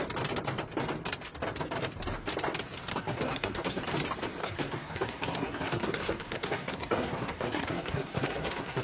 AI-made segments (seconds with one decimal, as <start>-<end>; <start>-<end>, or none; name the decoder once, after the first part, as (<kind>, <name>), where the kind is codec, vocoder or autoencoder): 2.9-3.8 (codec, SNAC); 4.4-8.8